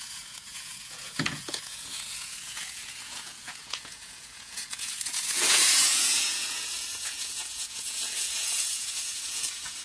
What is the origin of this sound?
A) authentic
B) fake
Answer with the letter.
B